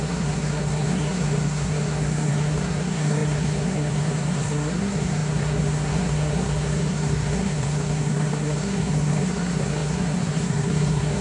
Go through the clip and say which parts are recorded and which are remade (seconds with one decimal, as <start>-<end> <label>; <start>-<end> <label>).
0.0-11.2 remade